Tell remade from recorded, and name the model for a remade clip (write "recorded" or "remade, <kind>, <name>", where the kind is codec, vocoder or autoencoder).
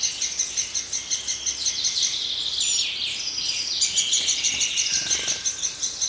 recorded